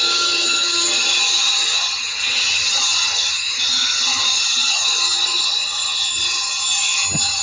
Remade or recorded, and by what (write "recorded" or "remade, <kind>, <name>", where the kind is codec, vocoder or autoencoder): remade, vocoder, HiFi-GAN